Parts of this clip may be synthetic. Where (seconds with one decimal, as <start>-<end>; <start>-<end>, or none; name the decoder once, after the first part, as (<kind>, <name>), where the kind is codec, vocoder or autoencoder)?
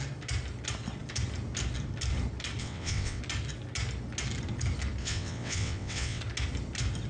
2.6-3.2 (vocoder, WaveNeXt); 5.0-6.2